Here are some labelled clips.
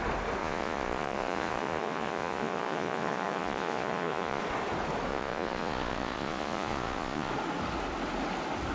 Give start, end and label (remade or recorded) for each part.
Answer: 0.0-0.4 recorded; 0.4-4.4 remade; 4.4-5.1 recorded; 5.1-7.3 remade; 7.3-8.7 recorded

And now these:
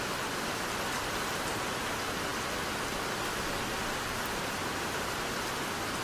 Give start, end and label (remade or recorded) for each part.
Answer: 0.0-4.6 recorded; 4.6-5.3 remade; 5.3-6.0 recorded

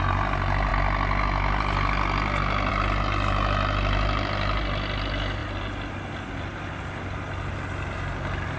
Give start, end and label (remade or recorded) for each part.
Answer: 0.0-8.6 recorded

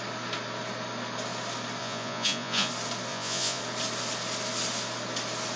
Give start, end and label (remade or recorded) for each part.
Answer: 0.0-1.8 recorded; 1.8-2.7 remade; 2.7-3.1 recorded; 3.1-3.6 remade; 3.6-5.6 recorded

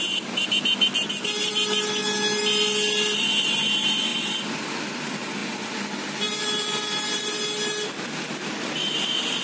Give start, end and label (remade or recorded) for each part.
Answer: 0.0-9.4 recorded

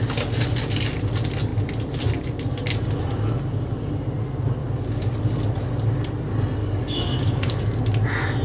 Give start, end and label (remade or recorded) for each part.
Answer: 0.0-4.6 recorded; 4.6-5.1 remade; 5.1-6.6 recorded; 6.6-7.6 remade; 7.6-8.4 recorded

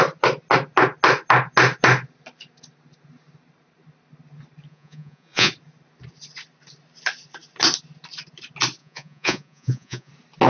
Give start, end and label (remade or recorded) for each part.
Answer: 0.0-4.7 recorded; 4.7-5.5 remade; 5.5-8.8 recorded; 8.8-10.1 remade; 10.1-10.5 recorded